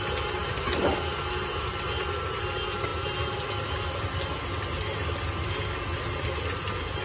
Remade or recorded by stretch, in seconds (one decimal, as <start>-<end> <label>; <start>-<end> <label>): 0.0-7.0 recorded